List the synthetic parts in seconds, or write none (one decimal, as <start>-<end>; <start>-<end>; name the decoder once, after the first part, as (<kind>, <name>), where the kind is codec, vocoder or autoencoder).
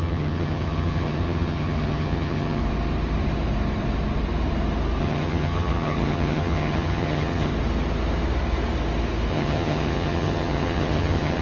0.0-2.6 (vocoder, HiFi-GAN); 5.0-7.5; 9.3-11.4